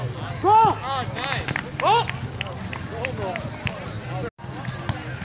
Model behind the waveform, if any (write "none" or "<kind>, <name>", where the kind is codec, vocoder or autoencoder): none